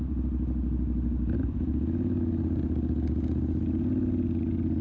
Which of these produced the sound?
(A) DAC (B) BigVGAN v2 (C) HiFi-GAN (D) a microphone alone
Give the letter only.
D